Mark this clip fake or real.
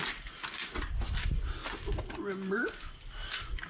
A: real